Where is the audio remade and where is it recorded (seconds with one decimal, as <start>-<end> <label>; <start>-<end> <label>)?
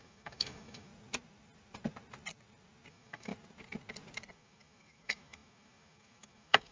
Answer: 0.0-0.9 remade; 0.9-2.9 recorded; 2.9-3.3 remade; 3.3-4.3 recorded; 4.3-6.7 remade